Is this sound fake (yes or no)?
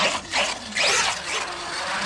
no